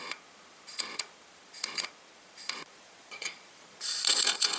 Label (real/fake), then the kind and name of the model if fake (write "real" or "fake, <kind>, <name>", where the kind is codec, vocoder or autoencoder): fake, vocoder, Vocos